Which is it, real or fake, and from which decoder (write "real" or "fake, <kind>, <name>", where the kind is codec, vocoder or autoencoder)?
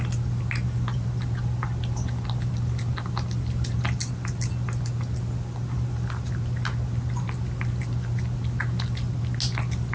real